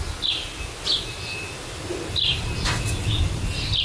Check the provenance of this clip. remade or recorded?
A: recorded